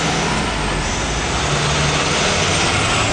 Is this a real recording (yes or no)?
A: yes